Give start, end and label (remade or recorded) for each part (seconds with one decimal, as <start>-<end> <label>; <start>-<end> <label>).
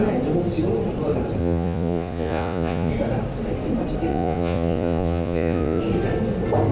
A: 0.0-1.4 recorded; 1.4-2.9 remade; 2.9-4.1 recorded; 4.1-5.8 remade; 5.8-6.7 recorded